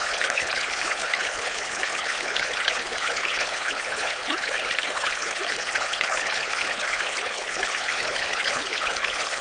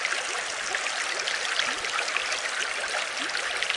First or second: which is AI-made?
first